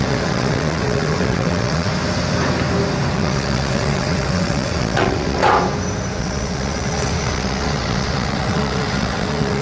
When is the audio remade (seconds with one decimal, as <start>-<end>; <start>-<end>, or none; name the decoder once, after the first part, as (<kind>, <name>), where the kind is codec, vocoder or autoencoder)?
0.0-1.9 (vocoder, WaveNeXt); 3.1-5.4; 6.2-9.6